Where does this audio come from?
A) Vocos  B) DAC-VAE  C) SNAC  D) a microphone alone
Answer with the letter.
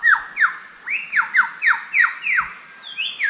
D